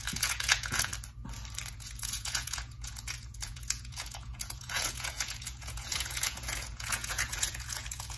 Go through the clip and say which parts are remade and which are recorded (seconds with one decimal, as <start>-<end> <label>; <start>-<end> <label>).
0.0-0.9 remade; 0.9-1.7 recorded; 1.7-8.2 remade